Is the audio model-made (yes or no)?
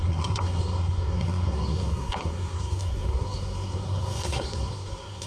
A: yes